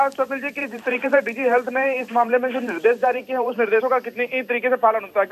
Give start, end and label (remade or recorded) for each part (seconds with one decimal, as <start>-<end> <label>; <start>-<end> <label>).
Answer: 0.0-0.6 recorded; 0.6-3.8 remade; 3.8-5.3 recorded